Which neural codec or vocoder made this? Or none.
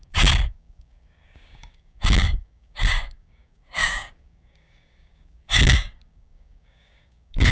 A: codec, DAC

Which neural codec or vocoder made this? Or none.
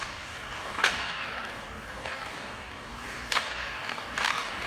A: codec, DAC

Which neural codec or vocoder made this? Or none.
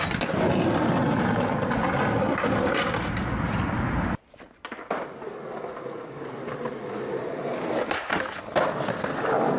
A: none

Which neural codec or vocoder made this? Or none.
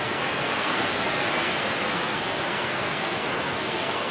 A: codec, SNAC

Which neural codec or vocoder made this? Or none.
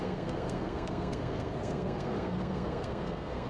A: codec, SNAC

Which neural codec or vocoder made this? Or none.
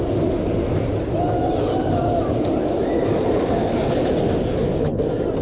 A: none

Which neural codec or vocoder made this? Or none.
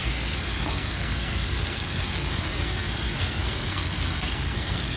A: codec, SNAC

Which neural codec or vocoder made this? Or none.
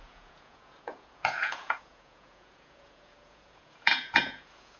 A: vocoder, Vocos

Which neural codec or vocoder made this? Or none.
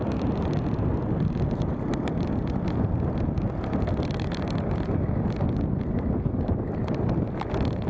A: none